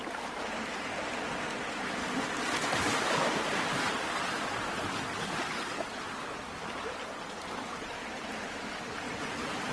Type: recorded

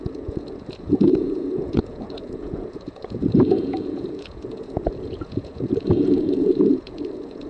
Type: remade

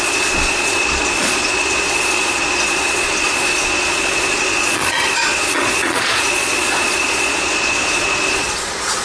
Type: remade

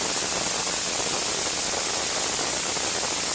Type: recorded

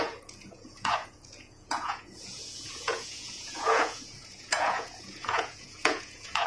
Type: remade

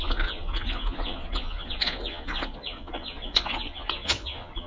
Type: remade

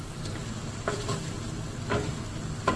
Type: recorded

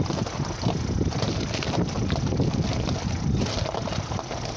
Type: recorded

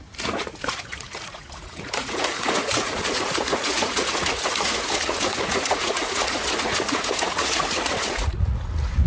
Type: remade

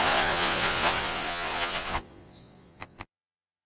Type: remade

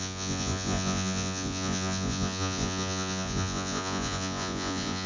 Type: remade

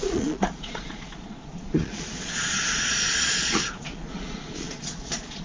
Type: remade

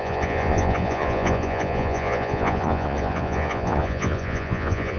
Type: remade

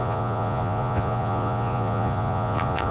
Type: remade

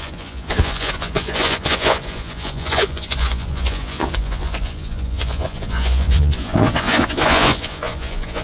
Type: remade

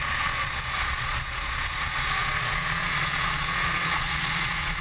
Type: remade